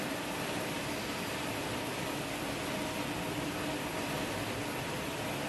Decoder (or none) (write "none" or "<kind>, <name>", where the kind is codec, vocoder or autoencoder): none